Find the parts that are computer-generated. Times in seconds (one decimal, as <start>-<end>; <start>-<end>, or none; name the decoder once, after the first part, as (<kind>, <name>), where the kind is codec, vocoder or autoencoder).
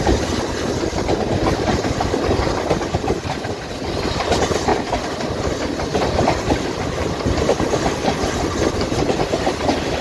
none